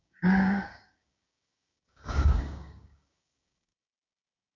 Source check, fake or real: fake